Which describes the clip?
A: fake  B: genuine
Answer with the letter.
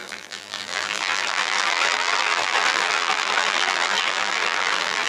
A